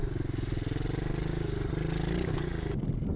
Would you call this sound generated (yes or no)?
no